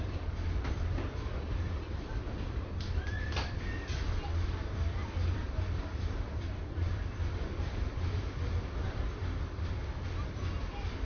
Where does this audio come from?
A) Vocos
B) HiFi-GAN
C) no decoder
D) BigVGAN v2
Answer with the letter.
D